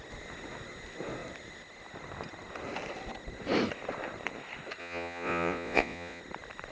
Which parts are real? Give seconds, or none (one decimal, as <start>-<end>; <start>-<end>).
0.0-4.8; 6.2-6.7